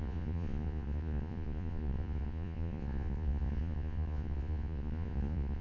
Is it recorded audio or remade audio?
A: remade